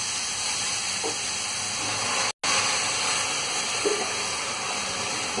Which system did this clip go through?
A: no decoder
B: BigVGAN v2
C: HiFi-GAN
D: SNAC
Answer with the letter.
A